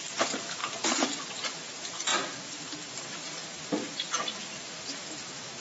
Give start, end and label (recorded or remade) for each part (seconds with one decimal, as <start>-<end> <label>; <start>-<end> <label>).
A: 0.0-5.6 recorded